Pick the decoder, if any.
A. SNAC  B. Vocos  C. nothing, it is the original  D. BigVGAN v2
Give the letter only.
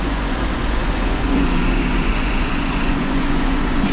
B